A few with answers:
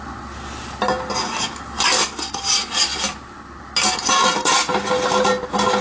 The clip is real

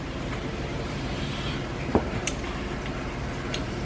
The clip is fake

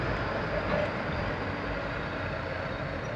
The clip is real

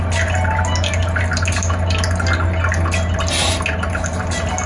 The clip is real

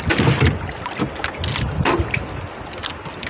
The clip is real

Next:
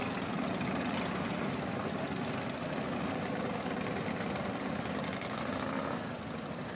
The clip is real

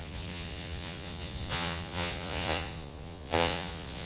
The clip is fake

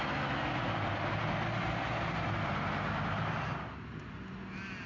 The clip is real